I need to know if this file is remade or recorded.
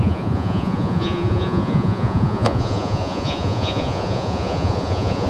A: remade